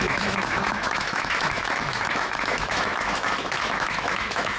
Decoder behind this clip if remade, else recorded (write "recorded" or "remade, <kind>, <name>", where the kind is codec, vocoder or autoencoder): remade, autoencoder, DAC-VAE